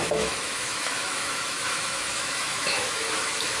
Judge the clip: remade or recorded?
remade